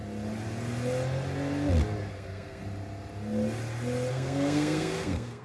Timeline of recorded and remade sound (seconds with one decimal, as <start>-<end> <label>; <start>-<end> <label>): 0.0-2.1 recorded; 2.1-2.6 remade; 2.6-4.1 recorded; 4.1-5.4 remade